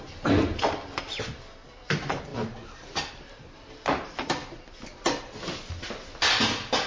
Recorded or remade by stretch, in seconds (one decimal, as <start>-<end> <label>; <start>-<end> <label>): 0.0-6.9 recorded